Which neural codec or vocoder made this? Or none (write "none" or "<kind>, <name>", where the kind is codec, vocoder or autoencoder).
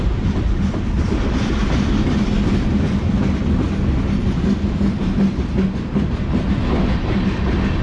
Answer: none